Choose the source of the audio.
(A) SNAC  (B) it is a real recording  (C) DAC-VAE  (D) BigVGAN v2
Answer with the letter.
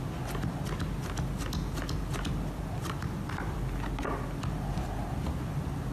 B